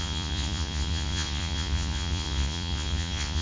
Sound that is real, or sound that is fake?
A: fake